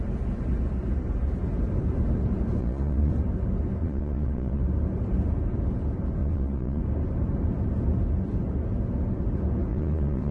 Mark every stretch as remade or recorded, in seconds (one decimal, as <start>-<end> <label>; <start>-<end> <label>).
0.0-2.6 recorded; 2.6-3.1 remade; 3.1-3.8 recorded; 3.8-4.6 remade; 4.6-6.2 recorded; 6.2-6.8 remade; 6.8-9.7 recorded; 9.7-10.3 remade